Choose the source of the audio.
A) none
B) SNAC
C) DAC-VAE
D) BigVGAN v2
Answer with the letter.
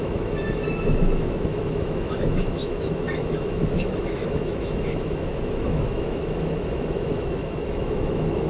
C